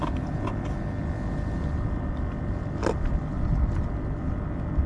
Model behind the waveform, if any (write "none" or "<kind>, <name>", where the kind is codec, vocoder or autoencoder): none